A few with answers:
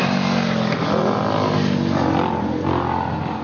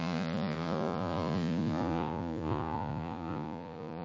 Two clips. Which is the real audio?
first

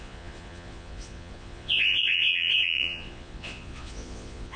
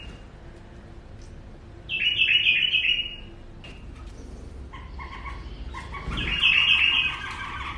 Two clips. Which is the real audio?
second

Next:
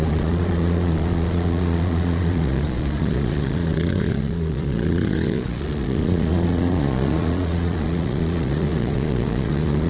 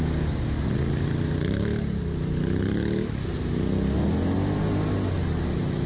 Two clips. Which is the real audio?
second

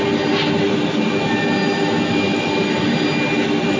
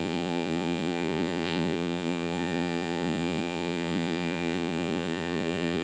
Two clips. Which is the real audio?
first